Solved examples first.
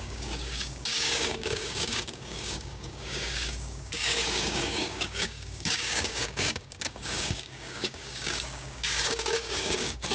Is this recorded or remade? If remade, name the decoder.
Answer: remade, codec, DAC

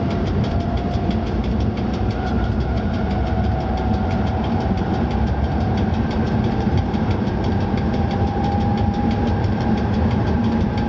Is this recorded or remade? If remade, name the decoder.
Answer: remade, vocoder, BigVGAN v2